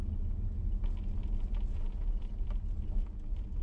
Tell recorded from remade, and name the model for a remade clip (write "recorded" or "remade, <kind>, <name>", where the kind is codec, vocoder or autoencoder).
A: recorded